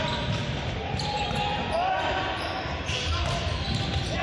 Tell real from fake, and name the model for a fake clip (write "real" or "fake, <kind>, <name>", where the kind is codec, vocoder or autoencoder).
real